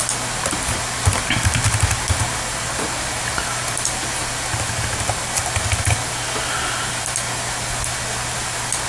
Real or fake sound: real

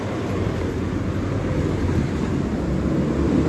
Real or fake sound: real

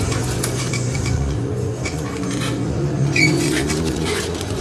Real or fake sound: fake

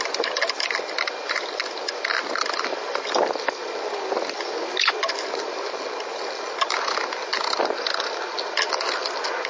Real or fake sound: real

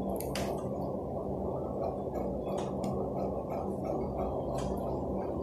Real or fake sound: real